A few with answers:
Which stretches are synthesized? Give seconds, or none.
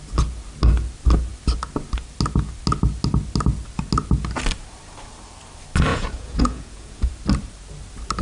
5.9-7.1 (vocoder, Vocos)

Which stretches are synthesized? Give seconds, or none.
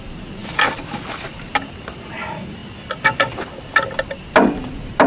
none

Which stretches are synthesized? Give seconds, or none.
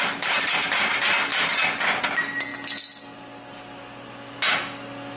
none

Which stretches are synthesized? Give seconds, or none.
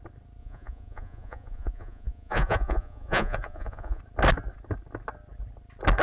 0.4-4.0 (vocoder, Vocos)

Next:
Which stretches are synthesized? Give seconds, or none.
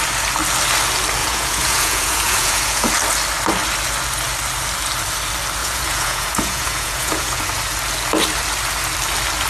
1.2-2.9 (vocoder, Vocos); 5.6-7.4